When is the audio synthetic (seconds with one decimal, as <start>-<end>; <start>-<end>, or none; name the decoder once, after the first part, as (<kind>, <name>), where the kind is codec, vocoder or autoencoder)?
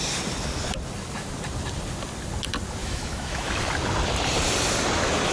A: 2.8-3.5 (autoencoder, DAC-VAE)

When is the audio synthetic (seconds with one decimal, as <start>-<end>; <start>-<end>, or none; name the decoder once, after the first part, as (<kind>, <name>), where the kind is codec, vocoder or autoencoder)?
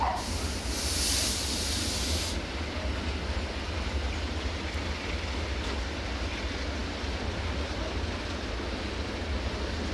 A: none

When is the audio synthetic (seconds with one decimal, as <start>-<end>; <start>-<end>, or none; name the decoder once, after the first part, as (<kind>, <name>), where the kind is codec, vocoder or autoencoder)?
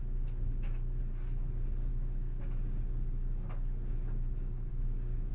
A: 0.0-1.0 (autoencoder, DAC-VAE); 1.9-2.4; 4.7-5.3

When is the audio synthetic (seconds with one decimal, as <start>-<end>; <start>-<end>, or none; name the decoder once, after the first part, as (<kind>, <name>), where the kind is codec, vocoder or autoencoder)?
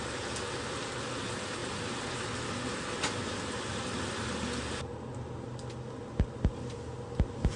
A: none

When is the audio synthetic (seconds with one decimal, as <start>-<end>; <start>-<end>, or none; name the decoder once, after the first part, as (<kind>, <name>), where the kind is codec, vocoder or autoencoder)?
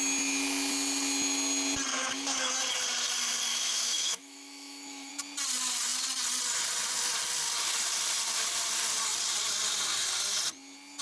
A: 1.9-2.5 (autoencoder, DAC-VAE); 3.5-5.1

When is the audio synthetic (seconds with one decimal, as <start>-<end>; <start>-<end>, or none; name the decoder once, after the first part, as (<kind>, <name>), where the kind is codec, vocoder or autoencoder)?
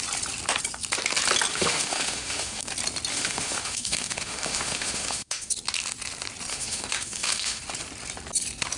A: 1.5-2.7 (autoencoder, DAC-VAE); 3.1-5.5; 6.5-7.6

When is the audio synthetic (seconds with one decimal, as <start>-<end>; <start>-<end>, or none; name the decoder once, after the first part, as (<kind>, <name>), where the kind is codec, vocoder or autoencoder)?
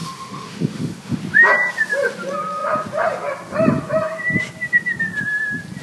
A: 0.0-1.2 (autoencoder, DAC-VAE)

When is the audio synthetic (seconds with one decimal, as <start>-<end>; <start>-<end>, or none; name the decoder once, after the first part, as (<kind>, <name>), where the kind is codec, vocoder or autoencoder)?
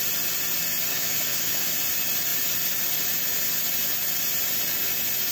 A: 0.9-1.7 (autoencoder, DAC-VAE)